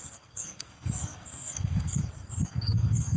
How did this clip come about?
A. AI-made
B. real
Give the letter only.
A